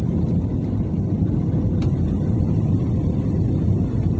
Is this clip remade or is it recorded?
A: recorded